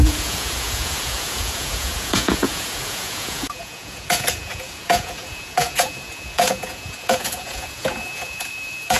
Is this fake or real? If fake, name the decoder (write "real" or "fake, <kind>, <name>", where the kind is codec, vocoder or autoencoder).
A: fake, vocoder, Vocos